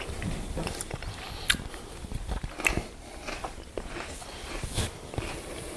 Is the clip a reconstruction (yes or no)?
no